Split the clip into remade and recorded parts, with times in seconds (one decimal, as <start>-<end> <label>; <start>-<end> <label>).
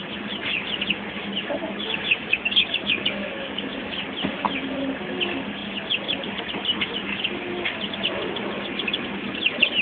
0.0-1.6 recorded; 1.6-4.0 remade; 4.0-9.8 recorded